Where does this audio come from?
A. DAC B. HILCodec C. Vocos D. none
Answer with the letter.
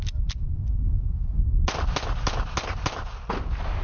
D